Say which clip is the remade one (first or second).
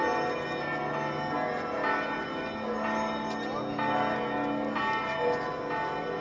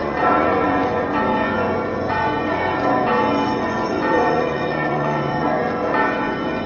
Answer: second